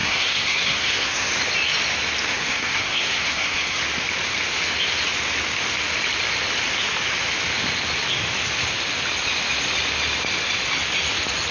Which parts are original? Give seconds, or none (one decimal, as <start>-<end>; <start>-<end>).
1.3-2.3; 3.8-11.5